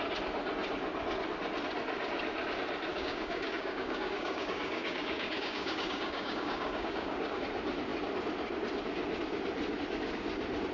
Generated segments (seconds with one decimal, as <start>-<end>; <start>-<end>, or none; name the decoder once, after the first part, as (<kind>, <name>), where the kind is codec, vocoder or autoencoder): 2.9-7.4 (codec, DAC)